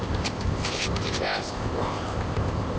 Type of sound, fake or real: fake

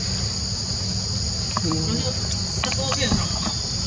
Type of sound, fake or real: real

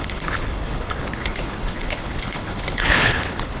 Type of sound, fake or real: fake